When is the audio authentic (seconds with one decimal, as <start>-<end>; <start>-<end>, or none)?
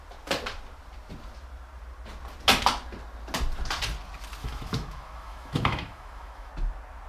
0.0-4.4; 6.5-7.1